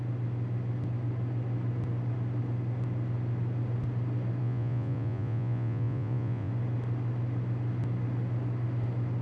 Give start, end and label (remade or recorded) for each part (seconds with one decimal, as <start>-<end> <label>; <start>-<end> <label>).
0.0-4.4 recorded; 4.4-6.5 remade; 6.5-9.2 recorded